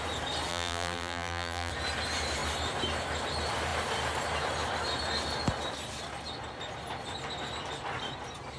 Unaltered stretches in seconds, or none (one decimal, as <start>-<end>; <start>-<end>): 0.0-0.5; 1.7-8.6